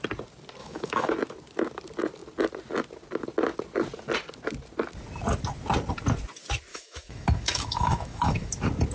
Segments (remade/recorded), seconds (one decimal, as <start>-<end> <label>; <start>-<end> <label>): 0.0-0.6 recorded; 0.6-1.1 remade; 1.1-6.7 recorded; 6.7-8.5 remade; 8.5-8.9 recorded